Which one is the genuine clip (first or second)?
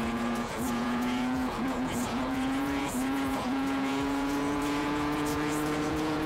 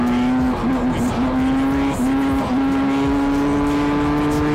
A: second